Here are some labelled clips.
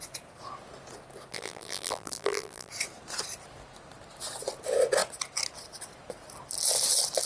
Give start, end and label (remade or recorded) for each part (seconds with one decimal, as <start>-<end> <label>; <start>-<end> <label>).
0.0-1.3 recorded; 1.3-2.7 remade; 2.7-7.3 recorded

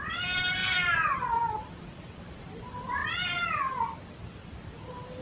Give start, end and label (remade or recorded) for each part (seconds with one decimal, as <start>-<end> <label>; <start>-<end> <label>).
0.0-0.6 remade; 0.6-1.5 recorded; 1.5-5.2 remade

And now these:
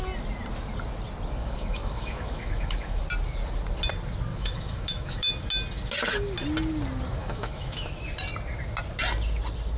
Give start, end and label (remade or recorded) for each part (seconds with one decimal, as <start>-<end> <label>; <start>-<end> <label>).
0.0-1.4 recorded; 1.4-3.0 remade; 3.0-4.3 recorded; 4.3-5.3 remade; 5.3-7.2 recorded; 7.2-8.0 remade; 8.0-9.8 recorded